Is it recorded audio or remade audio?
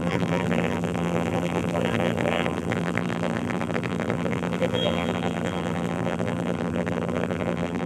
remade